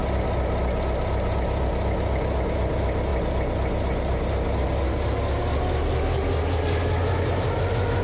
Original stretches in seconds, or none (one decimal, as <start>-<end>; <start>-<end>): 0.0-8.0

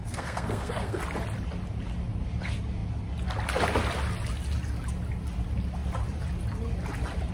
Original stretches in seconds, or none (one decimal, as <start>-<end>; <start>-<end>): 1.0-7.3